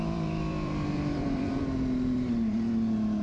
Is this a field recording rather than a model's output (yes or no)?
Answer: no